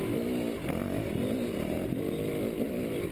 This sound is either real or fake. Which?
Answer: real